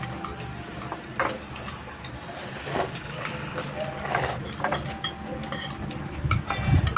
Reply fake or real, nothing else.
real